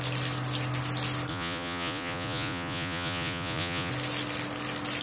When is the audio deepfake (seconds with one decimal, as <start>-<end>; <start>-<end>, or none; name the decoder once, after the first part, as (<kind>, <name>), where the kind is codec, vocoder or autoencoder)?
1.3-3.9 (vocoder, Vocos)